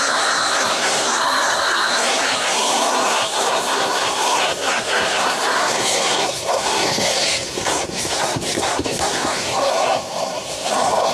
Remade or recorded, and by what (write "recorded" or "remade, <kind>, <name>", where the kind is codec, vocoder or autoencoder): remade, codec, SNAC